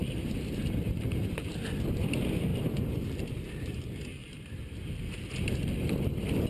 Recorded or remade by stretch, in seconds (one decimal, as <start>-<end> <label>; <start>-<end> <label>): 0.0-1.5 remade; 1.5-2.5 recorded; 2.5-3.5 remade; 3.5-4.2 recorded; 4.2-5.3 remade; 5.3-6.5 recorded